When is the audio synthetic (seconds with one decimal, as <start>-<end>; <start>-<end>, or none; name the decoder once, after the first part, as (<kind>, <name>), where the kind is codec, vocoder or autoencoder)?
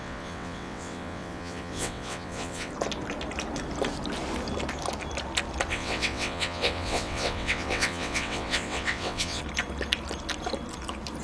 0.0-2.7 (vocoder, WaveNeXt); 5.7-9.4